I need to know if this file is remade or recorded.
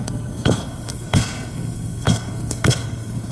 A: remade